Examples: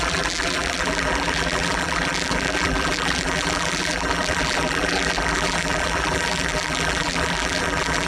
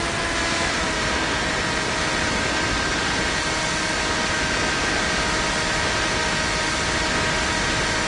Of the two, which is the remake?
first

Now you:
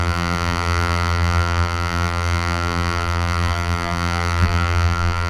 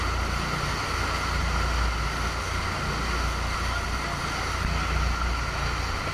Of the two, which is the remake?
first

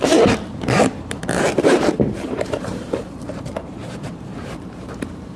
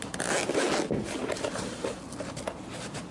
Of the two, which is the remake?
first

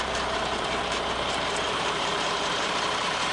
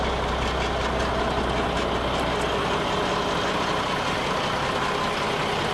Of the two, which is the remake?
first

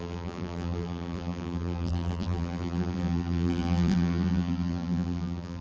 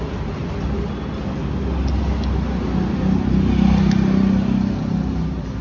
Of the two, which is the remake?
first